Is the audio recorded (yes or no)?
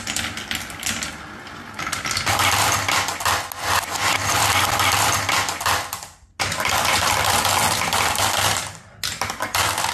yes